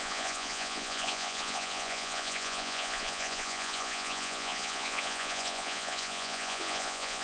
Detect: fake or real fake